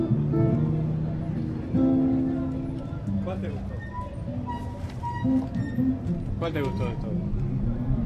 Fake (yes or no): no